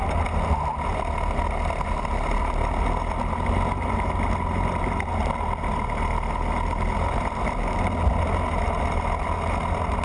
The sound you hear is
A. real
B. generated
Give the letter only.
A